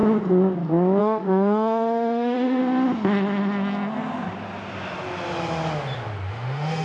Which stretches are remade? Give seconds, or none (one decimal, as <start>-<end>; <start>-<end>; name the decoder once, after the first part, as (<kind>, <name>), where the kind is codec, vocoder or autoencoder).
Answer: 1.0-2.6 (autoencoder, DAC-VAE); 6.3-6.8